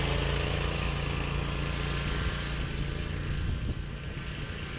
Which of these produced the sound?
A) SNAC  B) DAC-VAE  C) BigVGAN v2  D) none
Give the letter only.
D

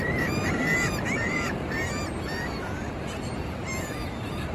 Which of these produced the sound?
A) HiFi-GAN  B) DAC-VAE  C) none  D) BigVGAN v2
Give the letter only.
D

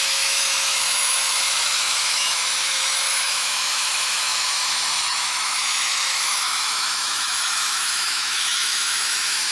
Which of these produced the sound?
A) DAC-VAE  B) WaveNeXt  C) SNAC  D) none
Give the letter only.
A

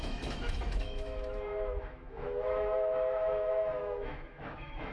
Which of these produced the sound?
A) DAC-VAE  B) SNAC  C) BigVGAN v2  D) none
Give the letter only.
A